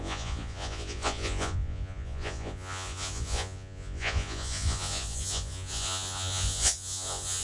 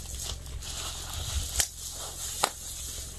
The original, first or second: second